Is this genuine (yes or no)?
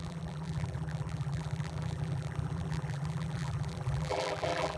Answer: no